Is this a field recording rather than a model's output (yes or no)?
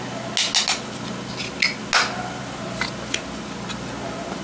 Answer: yes